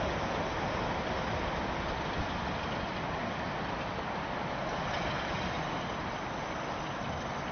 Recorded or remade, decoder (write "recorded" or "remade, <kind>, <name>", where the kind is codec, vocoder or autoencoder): recorded